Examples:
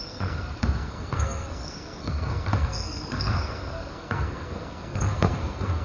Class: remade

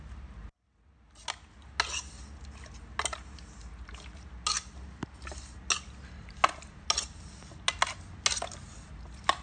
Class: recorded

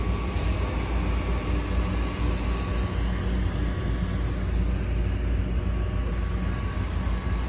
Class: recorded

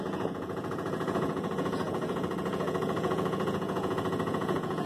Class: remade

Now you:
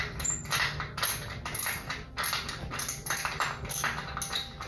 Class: recorded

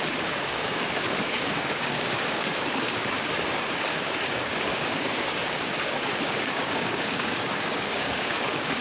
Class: remade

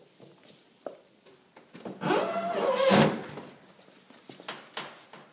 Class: recorded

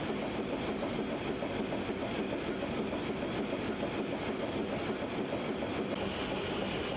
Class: recorded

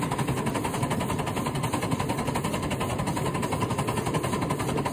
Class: recorded